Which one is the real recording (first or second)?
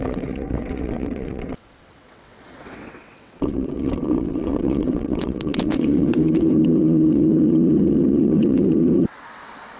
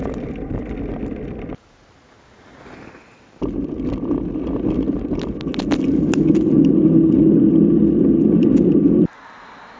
second